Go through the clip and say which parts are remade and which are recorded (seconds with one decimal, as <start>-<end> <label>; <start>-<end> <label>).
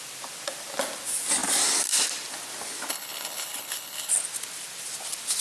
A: 0.0-2.9 recorded; 2.9-4.1 remade; 4.1-5.4 recorded